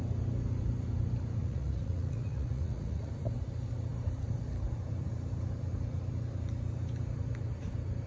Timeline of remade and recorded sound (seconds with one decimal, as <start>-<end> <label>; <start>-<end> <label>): 0.0-1.4 recorded; 1.4-3.1 remade; 3.1-8.1 recorded